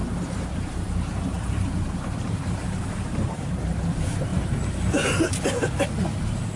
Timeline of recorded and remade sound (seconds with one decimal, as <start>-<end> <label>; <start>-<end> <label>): 0.0-4.3 remade; 4.3-4.9 recorded; 4.9-6.6 remade